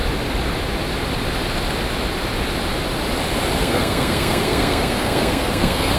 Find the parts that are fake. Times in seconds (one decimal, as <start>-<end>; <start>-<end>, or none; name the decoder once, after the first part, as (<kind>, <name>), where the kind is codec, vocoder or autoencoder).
3.6-6.0 (codec, SNAC)